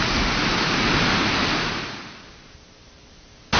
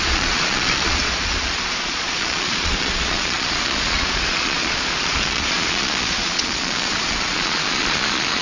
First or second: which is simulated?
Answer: second